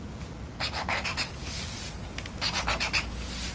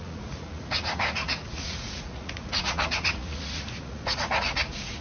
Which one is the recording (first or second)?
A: first